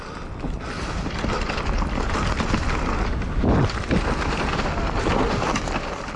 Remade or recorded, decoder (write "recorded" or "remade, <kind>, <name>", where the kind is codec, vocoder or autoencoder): recorded